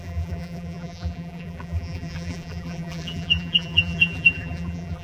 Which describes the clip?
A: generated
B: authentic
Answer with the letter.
A